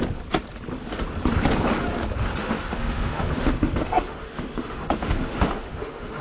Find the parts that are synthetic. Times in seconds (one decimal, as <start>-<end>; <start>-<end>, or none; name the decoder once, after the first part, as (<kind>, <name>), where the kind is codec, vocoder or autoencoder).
2.4-6.2 (autoencoder, DAC-VAE)